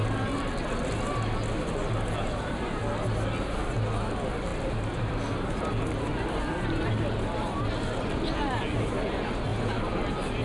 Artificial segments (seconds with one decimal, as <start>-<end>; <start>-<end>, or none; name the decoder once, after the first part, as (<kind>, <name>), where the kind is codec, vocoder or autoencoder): none